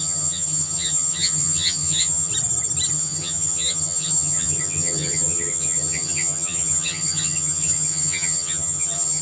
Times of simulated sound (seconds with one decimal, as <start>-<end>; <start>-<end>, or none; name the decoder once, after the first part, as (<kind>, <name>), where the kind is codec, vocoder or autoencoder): 0.0-2.3 (vocoder, HiFi-GAN); 2.9-9.2